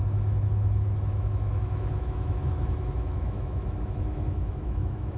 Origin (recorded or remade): remade